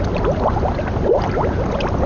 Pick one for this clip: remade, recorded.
recorded